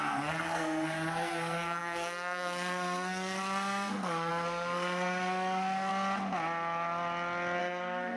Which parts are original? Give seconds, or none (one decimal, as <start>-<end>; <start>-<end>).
5.9-7.6